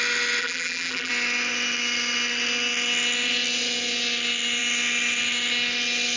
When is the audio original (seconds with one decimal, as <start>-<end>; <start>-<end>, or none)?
0.0-0.4; 1.1-6.2